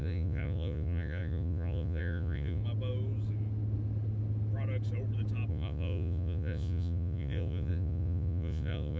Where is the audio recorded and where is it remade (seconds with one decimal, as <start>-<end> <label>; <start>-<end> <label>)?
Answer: 0.0-2.6 remade; 2.6-5.5 recorded; 5.5-9.0 remade